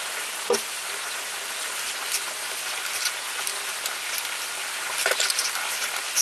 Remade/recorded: recorded